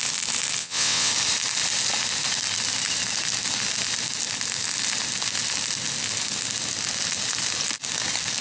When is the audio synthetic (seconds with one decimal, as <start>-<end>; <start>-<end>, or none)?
0.6-1.1